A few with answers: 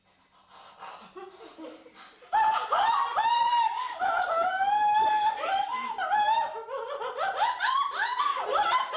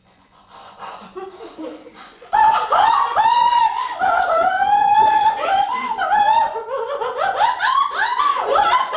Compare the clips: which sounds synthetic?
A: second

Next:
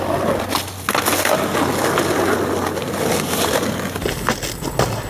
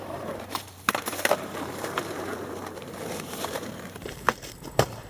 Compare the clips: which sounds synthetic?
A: second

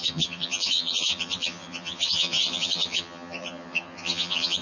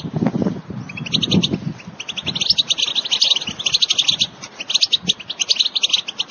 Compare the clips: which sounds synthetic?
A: first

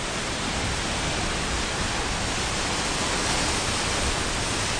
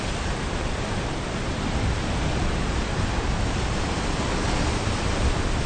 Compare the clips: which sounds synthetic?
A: second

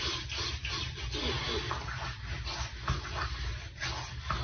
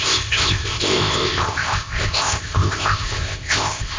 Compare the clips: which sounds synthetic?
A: second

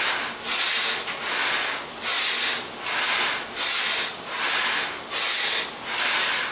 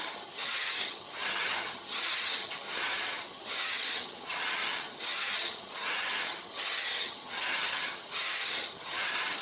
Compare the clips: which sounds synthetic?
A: second